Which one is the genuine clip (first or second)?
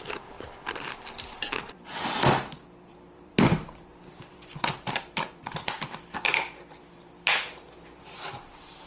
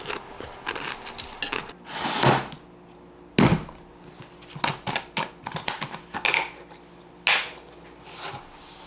second